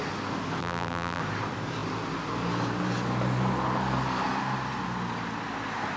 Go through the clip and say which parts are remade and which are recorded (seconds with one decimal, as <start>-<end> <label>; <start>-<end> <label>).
0.0-0.6 recorded; 0.6-1.2 remade; 1.2-6.0 recorded